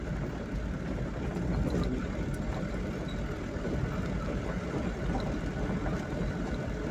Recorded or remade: recorded